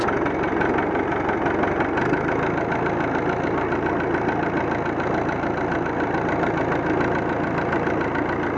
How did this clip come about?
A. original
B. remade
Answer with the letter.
A